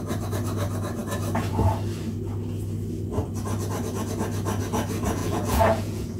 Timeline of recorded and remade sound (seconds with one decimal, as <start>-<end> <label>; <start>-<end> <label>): 0.0-5.2 recorded; 5.2-6.2 remade